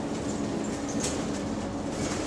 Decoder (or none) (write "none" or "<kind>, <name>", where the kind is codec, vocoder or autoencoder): none